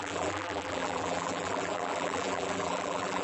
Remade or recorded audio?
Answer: remade